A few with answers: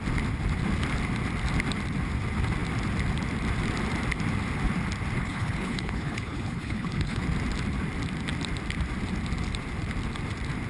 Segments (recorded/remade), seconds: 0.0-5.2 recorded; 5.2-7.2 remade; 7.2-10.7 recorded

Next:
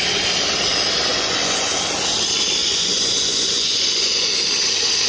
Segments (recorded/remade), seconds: 0.0-1.1 recorded; 1.1-1.7 remade; 1.7-2.6 recorded; 2.6-4.3 remade; 4.3-5.1 recorded